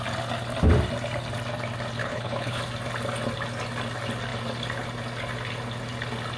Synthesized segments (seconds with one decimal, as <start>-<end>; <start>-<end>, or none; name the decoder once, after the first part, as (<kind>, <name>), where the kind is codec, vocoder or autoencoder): 2.0-2.6 (codec, HILCodec)

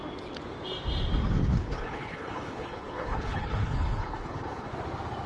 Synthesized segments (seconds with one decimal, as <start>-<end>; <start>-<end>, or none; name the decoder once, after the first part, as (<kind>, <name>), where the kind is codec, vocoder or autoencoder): 1.5-4.7 (codec, HILCodec)